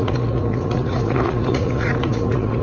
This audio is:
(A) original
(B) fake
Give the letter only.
B